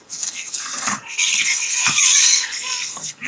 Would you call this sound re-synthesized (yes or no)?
yes